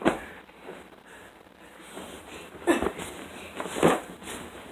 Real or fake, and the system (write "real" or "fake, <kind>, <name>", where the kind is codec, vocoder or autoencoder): real